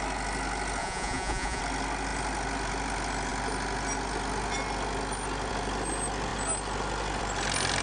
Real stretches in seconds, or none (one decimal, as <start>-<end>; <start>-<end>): 0.0-0.8; 1.6-7.8